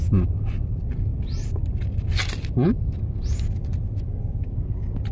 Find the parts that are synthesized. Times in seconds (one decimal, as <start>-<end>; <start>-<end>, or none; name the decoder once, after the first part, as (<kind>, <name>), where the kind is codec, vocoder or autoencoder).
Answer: none